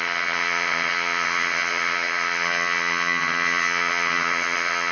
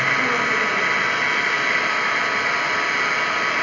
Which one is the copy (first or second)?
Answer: first